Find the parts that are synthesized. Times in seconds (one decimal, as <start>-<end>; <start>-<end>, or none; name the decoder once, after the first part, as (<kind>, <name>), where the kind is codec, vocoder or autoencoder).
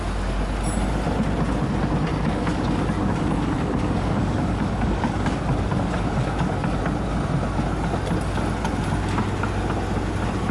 2.1-6.8 (codec, DAC)